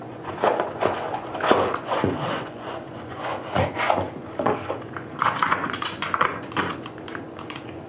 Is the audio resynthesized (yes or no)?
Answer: yes